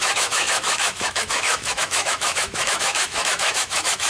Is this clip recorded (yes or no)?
no